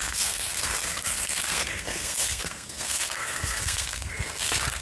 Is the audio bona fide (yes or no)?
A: no